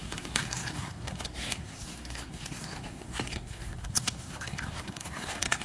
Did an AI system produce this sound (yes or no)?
yes